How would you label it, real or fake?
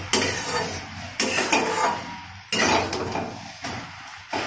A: real